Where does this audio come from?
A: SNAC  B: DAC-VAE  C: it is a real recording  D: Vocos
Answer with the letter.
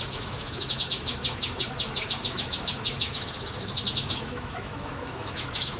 B